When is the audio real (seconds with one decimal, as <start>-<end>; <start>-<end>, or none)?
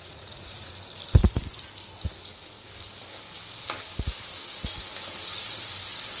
0.7-6.2